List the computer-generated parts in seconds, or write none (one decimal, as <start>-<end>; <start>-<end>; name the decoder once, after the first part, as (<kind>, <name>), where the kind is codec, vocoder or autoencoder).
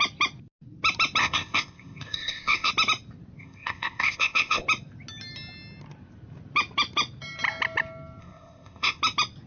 1.2-2.7 (codec, ZipCodec); 3.4-4.6; 8.2-9.0